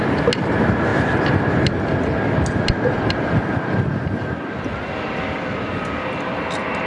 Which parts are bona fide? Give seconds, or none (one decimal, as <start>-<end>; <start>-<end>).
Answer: 0.0-0.9; 4.1-6.9